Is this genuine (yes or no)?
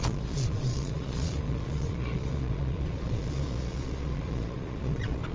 no